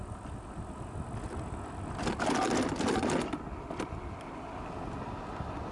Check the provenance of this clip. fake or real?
real